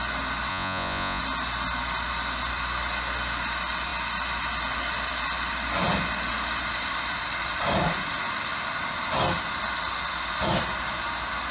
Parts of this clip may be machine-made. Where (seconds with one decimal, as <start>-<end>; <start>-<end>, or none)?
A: 0.5-1.2